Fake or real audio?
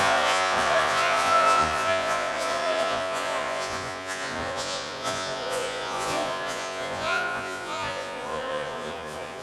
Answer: fake